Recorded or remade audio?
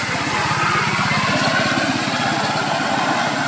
recorded